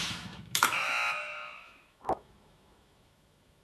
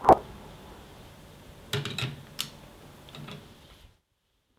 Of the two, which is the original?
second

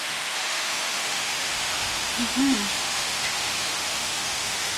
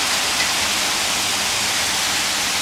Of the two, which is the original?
second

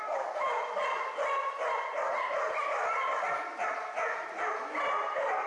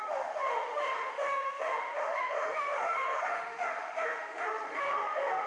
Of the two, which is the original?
first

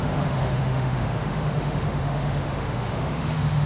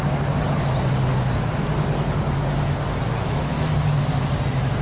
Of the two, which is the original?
second